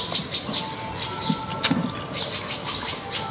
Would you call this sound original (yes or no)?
yes